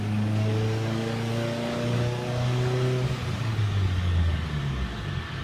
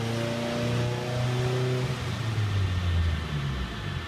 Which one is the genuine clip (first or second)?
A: second